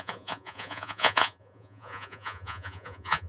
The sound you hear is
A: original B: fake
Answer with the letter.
B